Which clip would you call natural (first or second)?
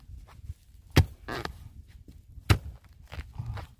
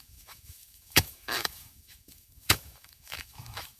first